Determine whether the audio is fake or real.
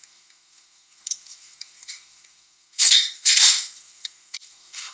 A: fake